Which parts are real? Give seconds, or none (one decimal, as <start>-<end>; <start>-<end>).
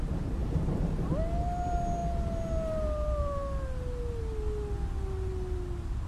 0.0-0.4; 1.1-6.1